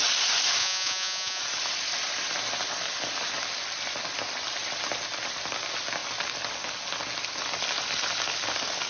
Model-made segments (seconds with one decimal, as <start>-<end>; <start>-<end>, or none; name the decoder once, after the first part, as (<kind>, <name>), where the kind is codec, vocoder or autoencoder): 0.6-1.4 (vocoder, Vocos)